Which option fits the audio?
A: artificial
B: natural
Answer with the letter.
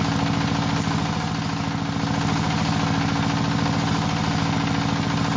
B